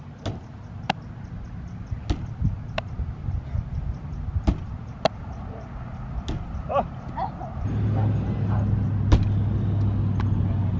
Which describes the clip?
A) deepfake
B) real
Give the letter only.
B